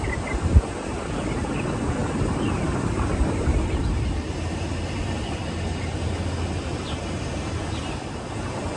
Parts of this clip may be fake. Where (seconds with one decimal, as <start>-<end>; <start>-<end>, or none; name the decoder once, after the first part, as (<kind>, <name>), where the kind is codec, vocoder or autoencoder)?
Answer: none